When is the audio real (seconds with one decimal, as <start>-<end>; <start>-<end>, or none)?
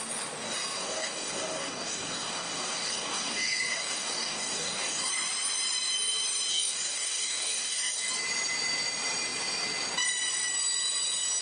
0.0-0.8; 5.1-6.5; 8.1-11.4